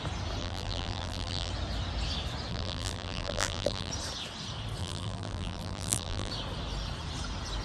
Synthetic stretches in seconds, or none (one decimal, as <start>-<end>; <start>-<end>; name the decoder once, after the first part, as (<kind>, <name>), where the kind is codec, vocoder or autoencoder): 0.4-1.5 (vocoder, BigVGAN v2); 2.5-3.9; 4.8-6.3

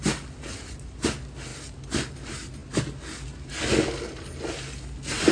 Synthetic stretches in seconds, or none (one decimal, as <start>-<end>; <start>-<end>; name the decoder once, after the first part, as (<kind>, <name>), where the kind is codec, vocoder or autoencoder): none

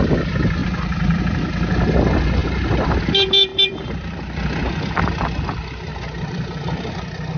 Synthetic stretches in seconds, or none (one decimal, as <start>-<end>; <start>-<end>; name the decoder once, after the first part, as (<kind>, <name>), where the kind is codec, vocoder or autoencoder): 0.6-1.2 (vocoder, BigVGAN v2); 2.4-3.0; 3.5-4.8; 5.9-6.9

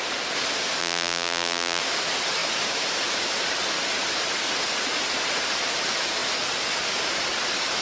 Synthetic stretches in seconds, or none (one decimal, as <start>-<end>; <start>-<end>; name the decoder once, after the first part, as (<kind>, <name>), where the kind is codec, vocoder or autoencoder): 0.8-1.8 (vocoder, BigVGAN v2)

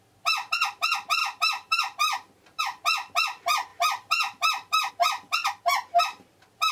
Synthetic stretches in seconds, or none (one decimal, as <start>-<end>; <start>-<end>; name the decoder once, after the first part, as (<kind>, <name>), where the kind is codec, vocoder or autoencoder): 1.2-2.6 (vocoder, BigVGAN v2); 3.7-4.9

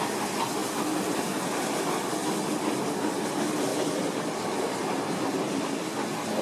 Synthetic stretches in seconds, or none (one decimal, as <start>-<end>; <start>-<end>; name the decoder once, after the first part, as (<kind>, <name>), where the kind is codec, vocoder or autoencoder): 0.6-1.8 (vocoder, BigVGAN v2); 3.7-4.3

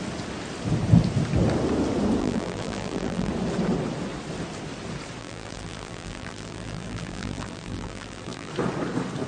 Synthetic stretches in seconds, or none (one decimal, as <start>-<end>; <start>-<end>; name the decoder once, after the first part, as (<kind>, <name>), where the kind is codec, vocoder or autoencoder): 2.2-3.3 (vocoder, BigVGAN v2); 5.2-8.5

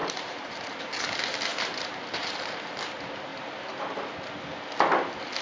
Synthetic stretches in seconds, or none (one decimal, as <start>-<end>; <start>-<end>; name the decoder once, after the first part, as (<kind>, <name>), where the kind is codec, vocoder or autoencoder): 0.0-0.8 (vocoder, BigVGAN v2); 1.5-2.8; 3.3-3.9